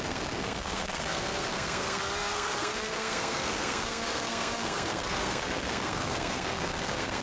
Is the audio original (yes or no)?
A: no